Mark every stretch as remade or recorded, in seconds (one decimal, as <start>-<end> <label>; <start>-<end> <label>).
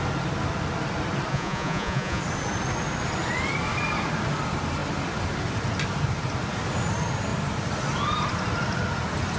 0.0-1.3 recorded; 1.3-2.2 remade; 2.2-9.4 recorded